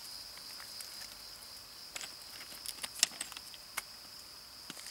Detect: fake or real real